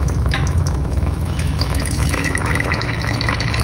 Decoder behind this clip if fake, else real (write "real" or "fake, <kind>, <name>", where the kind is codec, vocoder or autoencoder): fake, autoencoder, DAC-VAE